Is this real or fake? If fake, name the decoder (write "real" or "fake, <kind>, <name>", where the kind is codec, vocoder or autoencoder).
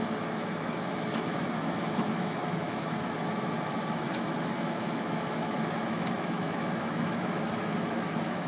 fake, autoencoder, DAC-VAE